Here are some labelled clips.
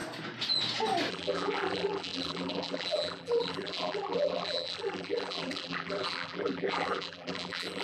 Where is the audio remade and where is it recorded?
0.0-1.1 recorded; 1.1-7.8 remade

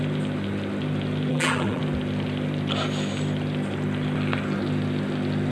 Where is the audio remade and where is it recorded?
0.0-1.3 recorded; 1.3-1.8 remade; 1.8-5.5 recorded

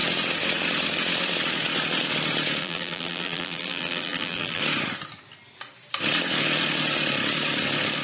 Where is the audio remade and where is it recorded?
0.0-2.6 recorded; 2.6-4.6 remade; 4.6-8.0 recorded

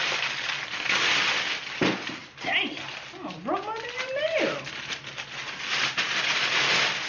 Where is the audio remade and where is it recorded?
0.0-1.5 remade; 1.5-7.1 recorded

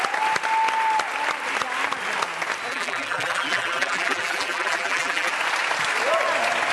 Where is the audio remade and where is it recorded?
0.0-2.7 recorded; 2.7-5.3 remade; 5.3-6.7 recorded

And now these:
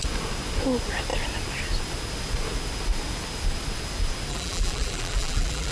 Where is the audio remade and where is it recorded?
0.0-4.3 recorded; 4.3-5.7 remade